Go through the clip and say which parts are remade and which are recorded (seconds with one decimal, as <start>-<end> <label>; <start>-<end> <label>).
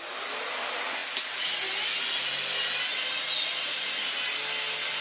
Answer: 0.0-5.0 recorded